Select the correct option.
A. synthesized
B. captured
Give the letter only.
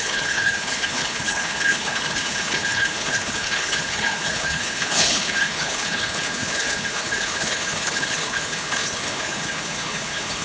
A